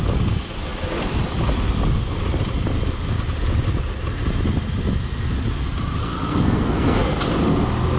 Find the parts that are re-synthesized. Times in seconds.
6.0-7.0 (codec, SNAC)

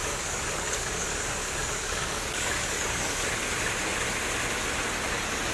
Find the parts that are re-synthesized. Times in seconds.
0.0-3.3 (codec, DAC)

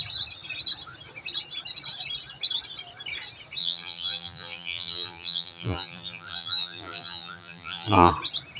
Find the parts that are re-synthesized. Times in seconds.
3.6-8.1 (vocoder, BigVGAN v2)

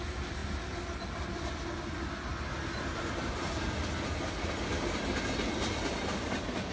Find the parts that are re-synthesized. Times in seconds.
none

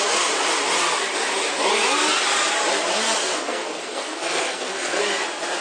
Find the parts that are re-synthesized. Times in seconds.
3.3-5.0 (codec, SNAC)

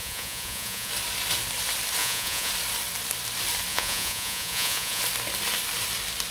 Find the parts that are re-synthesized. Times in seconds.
0.0-0.9 (vocoder, Vocos); 2.0-2.5; 3.7-5.0

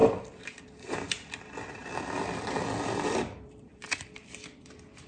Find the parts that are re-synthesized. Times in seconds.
1.8-5.1 (vocoder, BigVGAN v2)

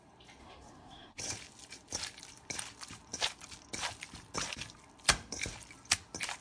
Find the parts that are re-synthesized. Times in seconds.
0.4-1.2 (codec, SNAC)